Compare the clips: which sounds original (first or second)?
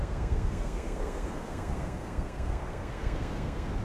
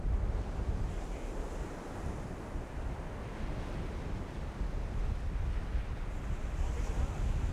second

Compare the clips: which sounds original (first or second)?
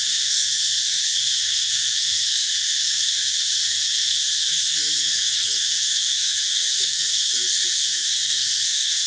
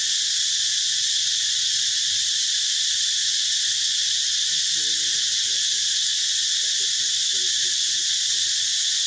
second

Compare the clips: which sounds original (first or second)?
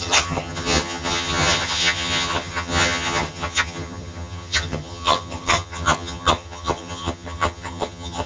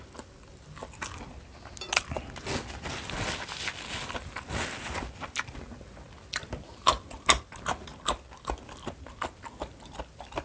second